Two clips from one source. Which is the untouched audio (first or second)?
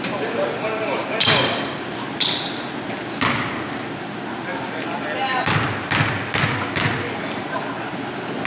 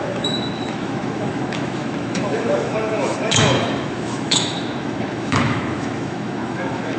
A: first